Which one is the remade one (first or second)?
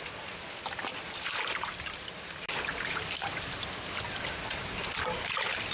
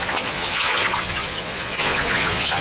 second